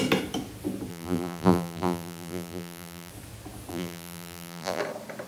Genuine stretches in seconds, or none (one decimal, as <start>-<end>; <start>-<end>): 0.0-0.9; 3.1-3.7; 4.8-5.3